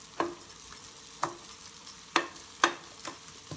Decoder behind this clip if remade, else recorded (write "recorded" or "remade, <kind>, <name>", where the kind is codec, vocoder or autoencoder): recorded